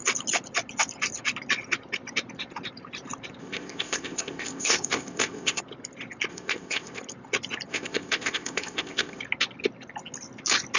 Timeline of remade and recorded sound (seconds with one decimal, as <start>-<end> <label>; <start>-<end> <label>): 0.0-3.4 recorded; 3.4-5.6 remade; 5.6-6.3 recorded; 6.3-7.0 remade; 7.0-7.7 recorded; 7.7-9.2 remade; 9.2-10.8 recorded